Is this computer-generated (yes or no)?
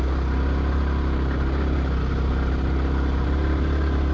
no